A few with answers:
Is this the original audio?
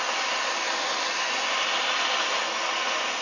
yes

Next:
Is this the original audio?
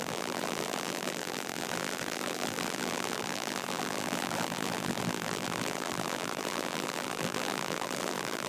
no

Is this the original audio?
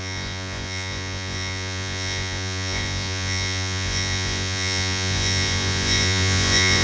no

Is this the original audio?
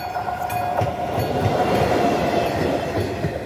yes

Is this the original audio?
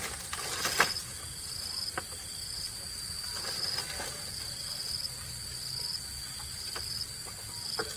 yes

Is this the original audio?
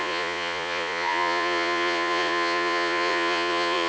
no